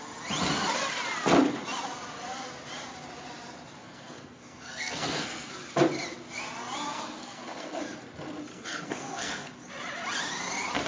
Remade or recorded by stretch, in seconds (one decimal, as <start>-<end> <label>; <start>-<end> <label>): 0.0-3.8 recorded; 3.8-5.5 remade; 5.5-6.9 recorded; 6.9-7.8 remade; 7.8-8.5 recorded; 8.5-9.5 remade; 9.5-10.9 recorded

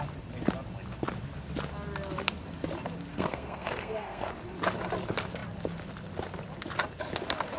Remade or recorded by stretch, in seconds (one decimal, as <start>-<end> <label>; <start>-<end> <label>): 0.0-3.1 recorded; 3.1-4.3 remade; 4.3-7.6 recorded

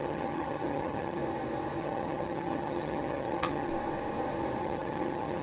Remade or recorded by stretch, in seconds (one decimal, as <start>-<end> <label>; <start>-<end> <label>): 0.0-1.2 remade; 1.2-1.8 recorded; 1.8-3.7 remade; 3.7-4.6 recorded; 4.6-5.4 remade

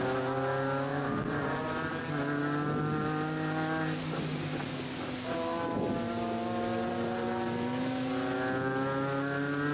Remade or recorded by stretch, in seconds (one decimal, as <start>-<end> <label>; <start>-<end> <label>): 0.0-0.9 recorded; 0.9-1.9 remade; 1.9-9.7 recorded